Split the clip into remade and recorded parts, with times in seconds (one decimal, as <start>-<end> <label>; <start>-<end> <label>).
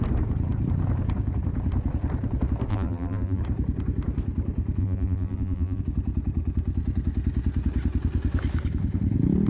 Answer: 0.0-2.7 recorded; 2.7-3.4 remade; 3.4-4.8 recorded; 4.8-5.8 remade; 5.8-9.5 recorded